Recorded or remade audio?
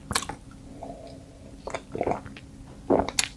recorded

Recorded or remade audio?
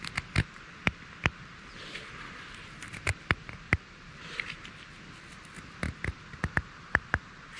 remade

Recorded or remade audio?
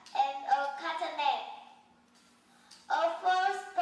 recorded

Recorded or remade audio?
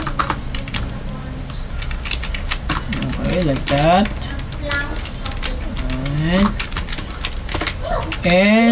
recorded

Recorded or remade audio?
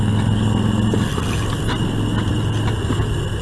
recorded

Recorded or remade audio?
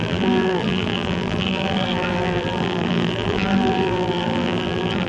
remade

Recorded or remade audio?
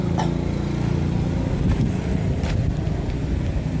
recorded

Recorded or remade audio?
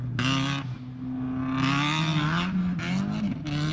recorded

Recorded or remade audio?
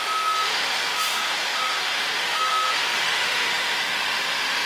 remade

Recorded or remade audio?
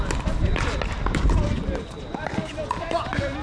recorded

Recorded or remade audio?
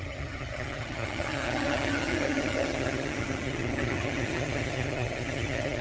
remade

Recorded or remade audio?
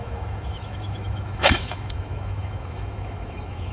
remade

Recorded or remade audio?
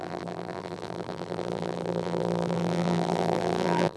remade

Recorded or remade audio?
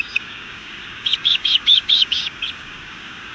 remade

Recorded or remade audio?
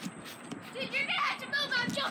recorded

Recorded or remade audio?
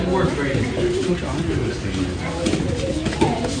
recorded